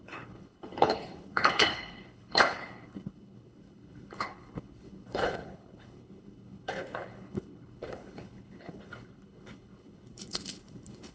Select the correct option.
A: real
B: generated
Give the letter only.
B